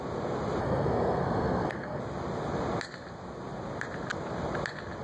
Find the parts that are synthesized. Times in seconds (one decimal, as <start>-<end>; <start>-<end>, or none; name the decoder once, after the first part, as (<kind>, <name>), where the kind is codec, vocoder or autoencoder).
0.6-2.0 (codec, SNAC)